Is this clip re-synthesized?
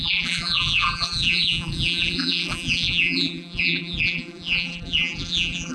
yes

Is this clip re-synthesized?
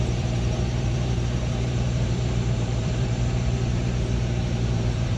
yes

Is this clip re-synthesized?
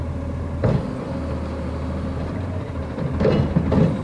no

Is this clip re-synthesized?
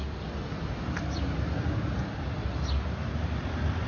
yes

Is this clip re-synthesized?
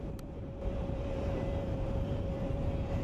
yes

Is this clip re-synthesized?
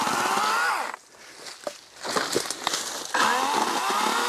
no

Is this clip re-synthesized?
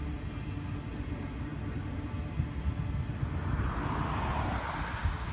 no